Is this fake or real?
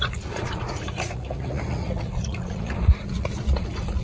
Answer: fake